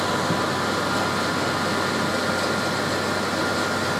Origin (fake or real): real